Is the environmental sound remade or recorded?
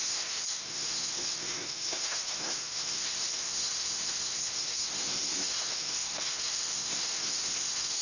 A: remade